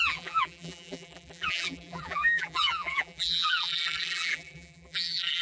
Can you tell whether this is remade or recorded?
remade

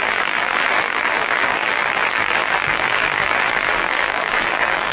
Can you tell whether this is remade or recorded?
remade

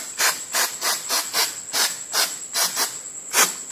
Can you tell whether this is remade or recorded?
recorded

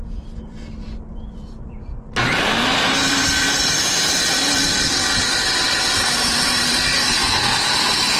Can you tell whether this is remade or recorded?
remade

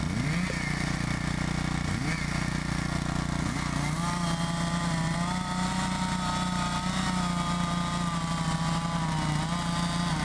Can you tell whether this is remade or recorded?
recorded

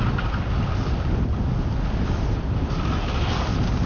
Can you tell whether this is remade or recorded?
recorded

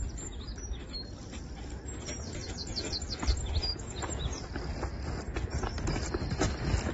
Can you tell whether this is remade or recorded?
recorded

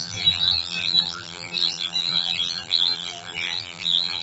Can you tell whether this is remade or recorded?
remade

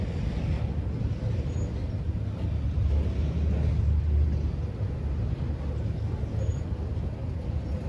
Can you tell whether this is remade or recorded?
recorded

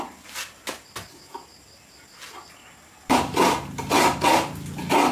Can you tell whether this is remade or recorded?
recorded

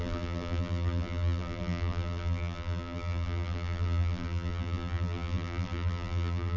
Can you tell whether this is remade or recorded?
remade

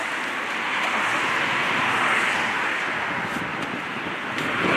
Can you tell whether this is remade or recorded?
recorded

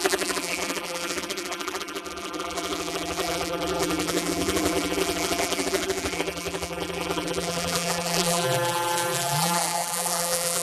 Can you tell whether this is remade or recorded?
remade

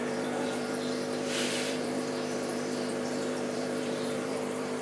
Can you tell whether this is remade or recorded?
remade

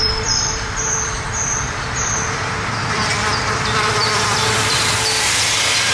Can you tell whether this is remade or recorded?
remade